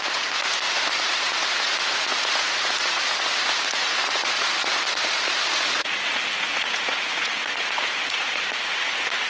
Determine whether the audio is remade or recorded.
remade